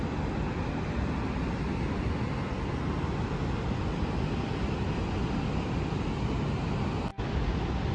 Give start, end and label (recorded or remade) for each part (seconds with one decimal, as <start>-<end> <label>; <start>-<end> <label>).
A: 0.0-7.9 recorded